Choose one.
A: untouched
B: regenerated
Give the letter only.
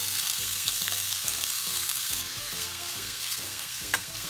B